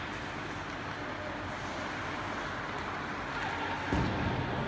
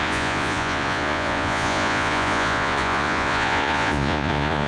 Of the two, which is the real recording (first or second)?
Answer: first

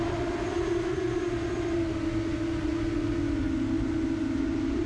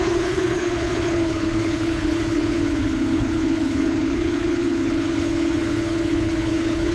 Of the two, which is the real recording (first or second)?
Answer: first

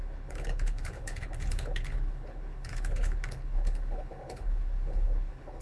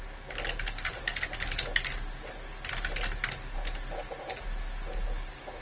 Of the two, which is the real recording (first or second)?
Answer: second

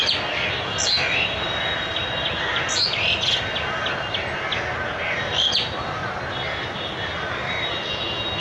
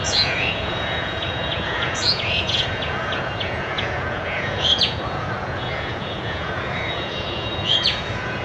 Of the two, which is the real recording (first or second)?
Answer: first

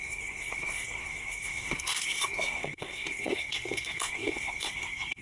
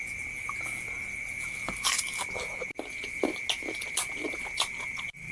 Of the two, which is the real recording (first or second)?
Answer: second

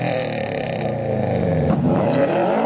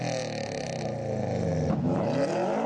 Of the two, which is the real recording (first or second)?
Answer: second